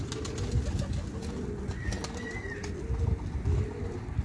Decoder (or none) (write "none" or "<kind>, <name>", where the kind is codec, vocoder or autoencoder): none